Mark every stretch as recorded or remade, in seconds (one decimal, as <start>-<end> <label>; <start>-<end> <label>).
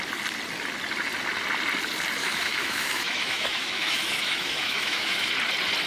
0.0-2.2 recorded; 2.2-5.3 remade; 5.3-5.9 recorded